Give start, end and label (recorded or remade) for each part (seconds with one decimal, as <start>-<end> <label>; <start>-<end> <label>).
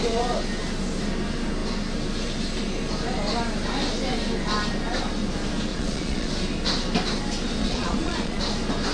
0.0-5.7 recorded; 5.7-6.3 remade; 6.3-7.6 recorded; 7.6-8.4 remade; 8.4-8.9 recorded